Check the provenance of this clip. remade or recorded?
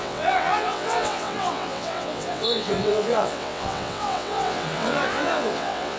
remade